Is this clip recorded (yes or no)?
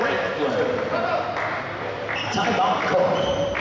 yes